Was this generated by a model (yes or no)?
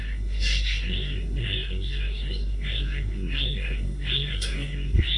yes